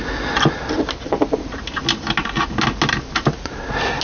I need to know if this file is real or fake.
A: real